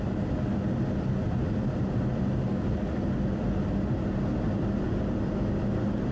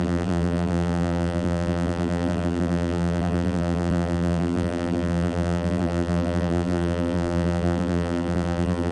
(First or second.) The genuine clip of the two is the first